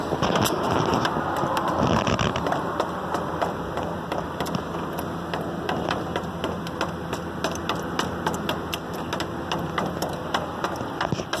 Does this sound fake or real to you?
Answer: real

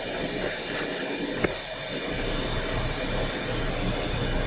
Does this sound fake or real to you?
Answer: real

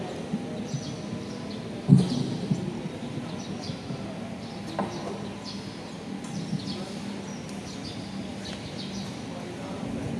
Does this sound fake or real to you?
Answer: real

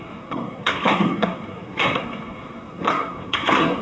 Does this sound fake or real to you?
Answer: fake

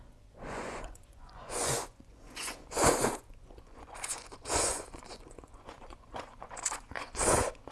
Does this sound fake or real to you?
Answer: fake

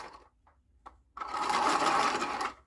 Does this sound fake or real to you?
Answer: fake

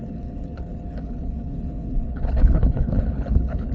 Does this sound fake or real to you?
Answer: fake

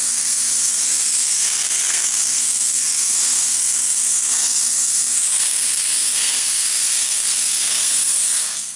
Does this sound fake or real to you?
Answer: fake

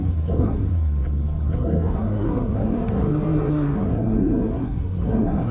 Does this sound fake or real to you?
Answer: fake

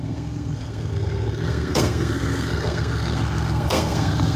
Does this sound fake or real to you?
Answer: fake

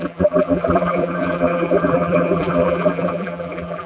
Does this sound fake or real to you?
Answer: fake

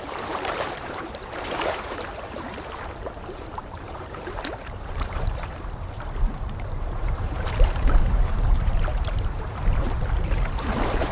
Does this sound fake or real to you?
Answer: fake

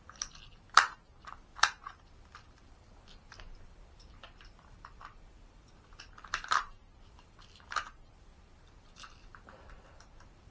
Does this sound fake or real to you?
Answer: fake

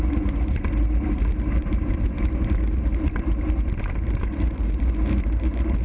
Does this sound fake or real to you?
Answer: fake